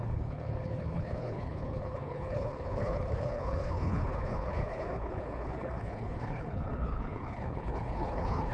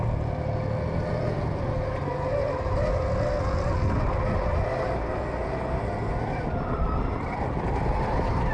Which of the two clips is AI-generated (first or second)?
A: first